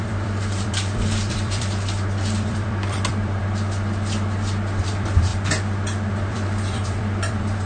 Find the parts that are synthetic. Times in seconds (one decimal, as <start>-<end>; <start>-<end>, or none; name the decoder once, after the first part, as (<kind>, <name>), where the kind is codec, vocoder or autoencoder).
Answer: 0.0-3.4 (vocoder, BigVGAN v2); 4.8-5.3; 6.1-7.7

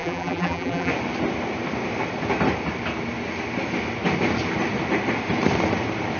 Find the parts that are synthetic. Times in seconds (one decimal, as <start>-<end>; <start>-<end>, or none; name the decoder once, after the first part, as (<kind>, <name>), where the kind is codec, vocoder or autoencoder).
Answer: 0.0-0.9 (vocoder, BigVGAN v2)

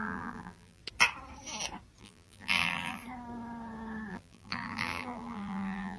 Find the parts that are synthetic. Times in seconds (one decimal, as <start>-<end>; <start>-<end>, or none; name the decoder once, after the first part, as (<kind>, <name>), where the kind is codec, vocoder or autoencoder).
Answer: 0.0-0.8 (vocoder, BigVGAN v2); 2.0-3.0; 4.1-6.0

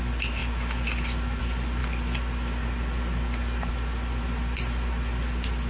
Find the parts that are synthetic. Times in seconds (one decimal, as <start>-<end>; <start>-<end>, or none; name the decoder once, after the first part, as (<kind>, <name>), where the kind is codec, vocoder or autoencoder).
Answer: none

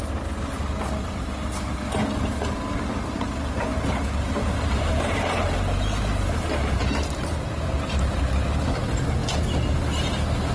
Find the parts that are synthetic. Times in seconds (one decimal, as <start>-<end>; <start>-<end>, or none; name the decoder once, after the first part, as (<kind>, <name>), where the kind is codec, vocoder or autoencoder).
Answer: 3.7-8.2 (vocoder, BigVGAN v2)

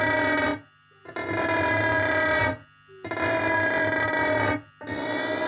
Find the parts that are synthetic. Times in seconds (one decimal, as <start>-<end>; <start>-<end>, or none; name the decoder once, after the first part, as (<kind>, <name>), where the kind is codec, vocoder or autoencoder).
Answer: 0.5-1.1 (vocoder, BigVGAN v2)